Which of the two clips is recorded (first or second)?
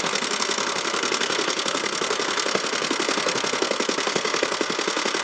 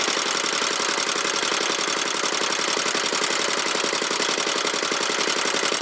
second